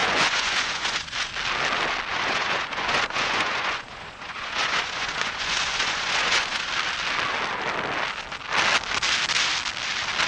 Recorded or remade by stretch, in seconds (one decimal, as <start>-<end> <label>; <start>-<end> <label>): 0.0-1.3 remade; 1.3-2.1 recorded; 2.1-6.7 remade; 6.7-10.3 recorded